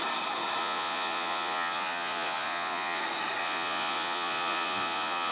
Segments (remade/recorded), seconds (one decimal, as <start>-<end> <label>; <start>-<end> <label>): 0.0-0.6 recorded; 0.6-3.0 remade; 3.0-3.4 recorded; 3.4-5.3 remade